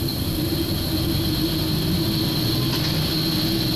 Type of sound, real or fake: real